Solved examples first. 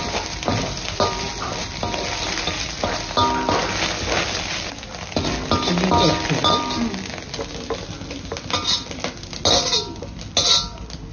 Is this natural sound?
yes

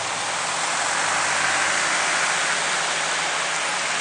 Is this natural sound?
yes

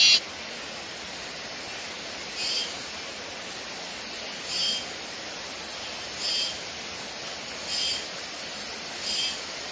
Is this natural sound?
yes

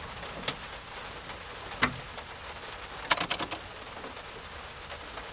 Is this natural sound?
yes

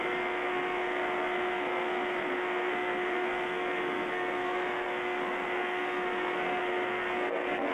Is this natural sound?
no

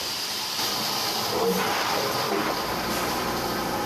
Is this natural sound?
no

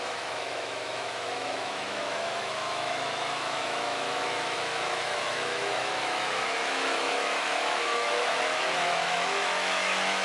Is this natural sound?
no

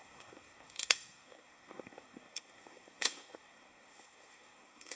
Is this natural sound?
no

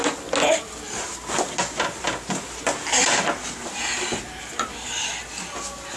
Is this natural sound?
yes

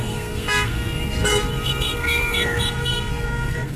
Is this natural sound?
no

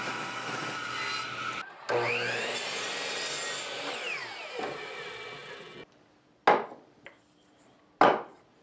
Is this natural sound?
yes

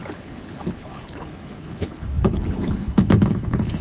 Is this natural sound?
no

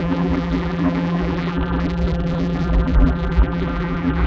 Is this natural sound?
no